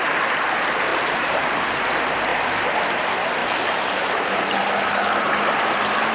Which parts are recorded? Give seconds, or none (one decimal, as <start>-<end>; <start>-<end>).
0.0-0.9; 1.8-3.4; 4.6-6.1